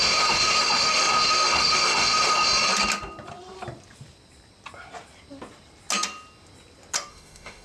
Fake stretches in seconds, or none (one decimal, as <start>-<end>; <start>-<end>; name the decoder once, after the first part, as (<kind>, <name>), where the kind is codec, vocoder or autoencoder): 0.0-2.5 (autoencoder, DAC-VAE); 7.1-7.6